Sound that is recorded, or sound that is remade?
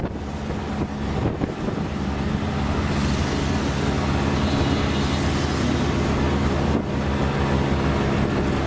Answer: recorded